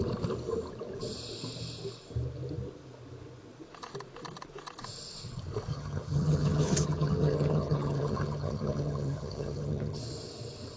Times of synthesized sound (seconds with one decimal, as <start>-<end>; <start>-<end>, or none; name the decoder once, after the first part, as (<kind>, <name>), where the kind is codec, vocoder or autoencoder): 5.7-10.0 (vocoder, HiFi-GAN)